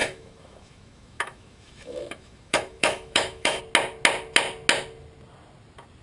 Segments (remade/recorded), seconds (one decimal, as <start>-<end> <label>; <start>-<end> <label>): 0.0-3.6 remade; 3.6-6.0 recorded